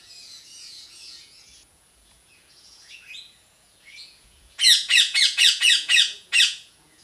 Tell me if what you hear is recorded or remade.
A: remade